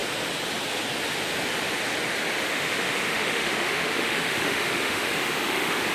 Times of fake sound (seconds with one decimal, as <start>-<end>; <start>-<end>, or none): 2.5-5.9